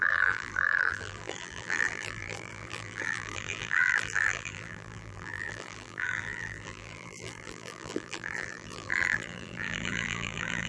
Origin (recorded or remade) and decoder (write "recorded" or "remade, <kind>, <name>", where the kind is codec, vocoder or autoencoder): remade, vocoder, BigVGAN v2